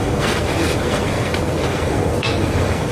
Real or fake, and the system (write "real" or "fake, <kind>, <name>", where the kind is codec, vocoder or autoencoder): fake, codec, SNAC